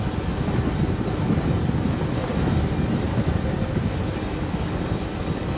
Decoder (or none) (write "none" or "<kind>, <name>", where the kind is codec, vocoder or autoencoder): none